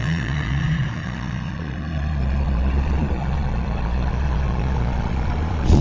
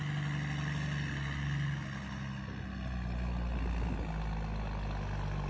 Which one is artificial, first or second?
first